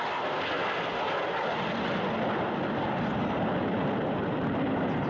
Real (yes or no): yes